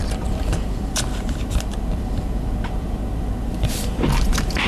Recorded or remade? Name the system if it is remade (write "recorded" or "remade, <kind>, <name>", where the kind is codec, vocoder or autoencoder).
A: remade, vocoder, BigVGAN v2